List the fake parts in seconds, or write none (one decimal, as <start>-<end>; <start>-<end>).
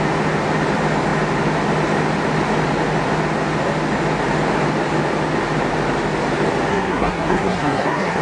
6.7-8.2